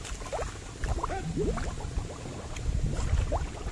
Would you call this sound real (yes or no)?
yes